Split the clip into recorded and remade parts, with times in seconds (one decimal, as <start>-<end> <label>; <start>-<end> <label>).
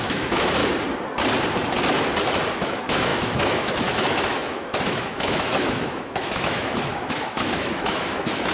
0.0-0.6 remade; 0.6-2.5 recorded; 2.5-8.5 remade